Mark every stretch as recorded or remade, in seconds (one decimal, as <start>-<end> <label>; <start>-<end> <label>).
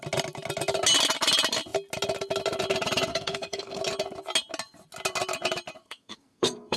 0.0-3.1 recorded; 3.1-3.8 remade; 3.8-5.8 recorded; 5.8-6.8 remade